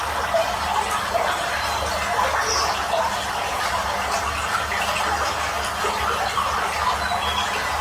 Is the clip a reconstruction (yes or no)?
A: no